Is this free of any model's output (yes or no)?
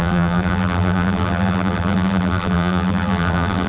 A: no